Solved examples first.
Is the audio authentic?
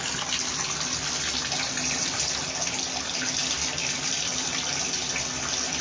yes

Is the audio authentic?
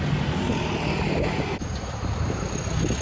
yes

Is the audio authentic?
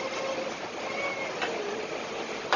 yes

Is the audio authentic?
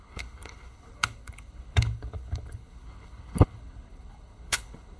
no